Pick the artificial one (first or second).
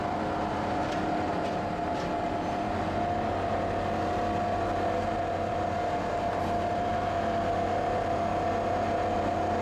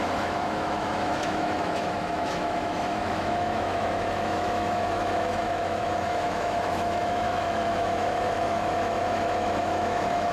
second